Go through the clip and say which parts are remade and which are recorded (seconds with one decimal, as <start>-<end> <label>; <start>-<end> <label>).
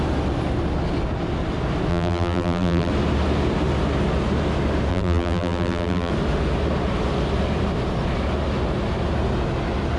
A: 0.0-1.9 recorded; 1.9-2.9 remade; 2.9-4.9 recorded; 4.9-6.1 remade; 6.1-10.0 recorded